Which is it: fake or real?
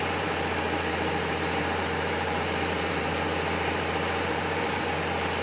fake